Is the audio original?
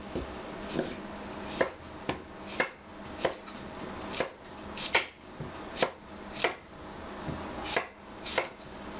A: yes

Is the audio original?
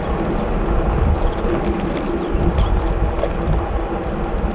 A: yes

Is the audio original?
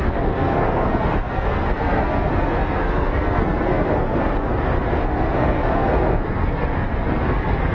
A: no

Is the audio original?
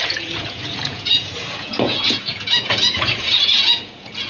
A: no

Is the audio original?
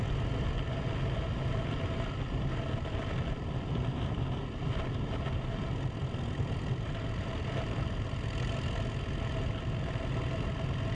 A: yes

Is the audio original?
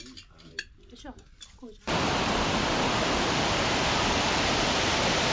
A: yes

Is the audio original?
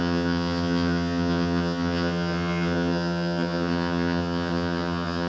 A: no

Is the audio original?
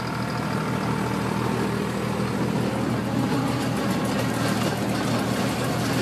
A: yes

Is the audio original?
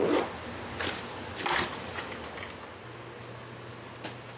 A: yes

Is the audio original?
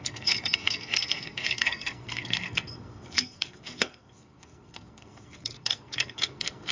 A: no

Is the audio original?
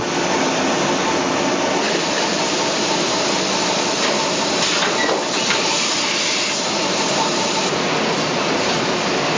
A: no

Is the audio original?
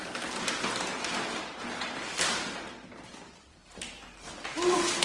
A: no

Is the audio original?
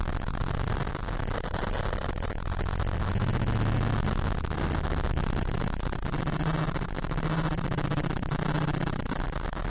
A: yes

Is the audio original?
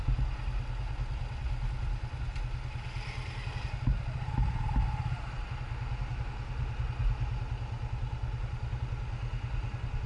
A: yes